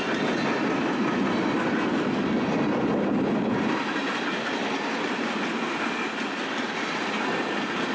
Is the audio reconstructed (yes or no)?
no